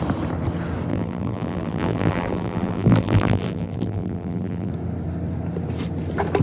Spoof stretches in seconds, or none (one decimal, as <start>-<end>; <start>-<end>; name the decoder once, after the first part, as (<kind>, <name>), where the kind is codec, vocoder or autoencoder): 0.9-4.7 (vocoder, BigVGAN v2)